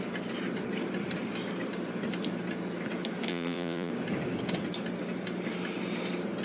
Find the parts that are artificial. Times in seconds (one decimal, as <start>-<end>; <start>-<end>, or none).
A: 3.3-3.9